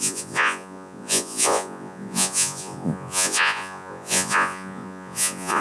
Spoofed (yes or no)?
yes